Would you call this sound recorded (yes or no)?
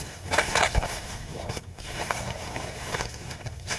no